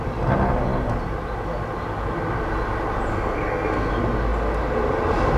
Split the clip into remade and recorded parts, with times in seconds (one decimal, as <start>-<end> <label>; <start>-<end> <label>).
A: 0.0-3.1 recorded; 3.1-3.9 remade; 3.9-5.4 recorded